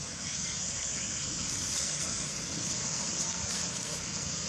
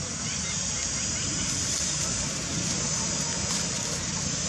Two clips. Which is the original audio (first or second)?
second